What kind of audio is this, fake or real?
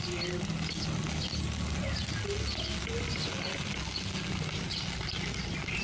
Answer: real